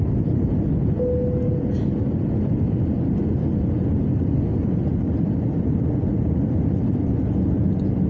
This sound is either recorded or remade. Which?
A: recorded